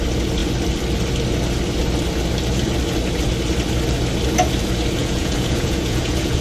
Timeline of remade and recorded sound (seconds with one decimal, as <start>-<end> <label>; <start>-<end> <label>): 0.0-5.0 recorded; 5.0-6.4 remade